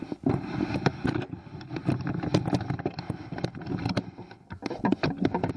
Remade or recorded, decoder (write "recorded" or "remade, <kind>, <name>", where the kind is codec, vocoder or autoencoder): recorded